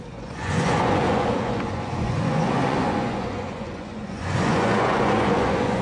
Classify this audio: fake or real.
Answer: fake